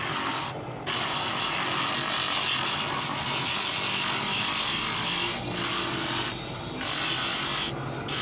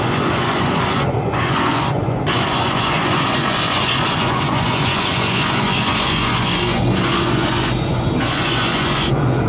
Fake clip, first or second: second